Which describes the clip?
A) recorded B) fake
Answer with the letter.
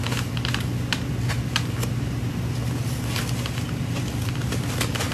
A